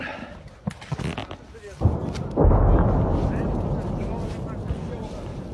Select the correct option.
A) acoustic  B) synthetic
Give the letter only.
A